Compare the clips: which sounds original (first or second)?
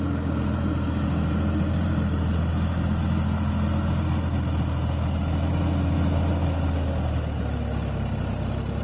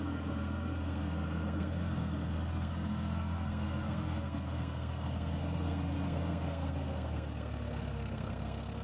first